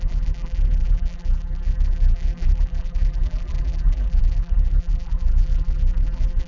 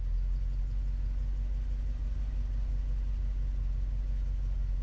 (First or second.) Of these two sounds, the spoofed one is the first